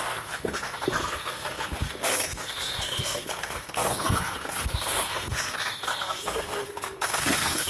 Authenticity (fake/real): fake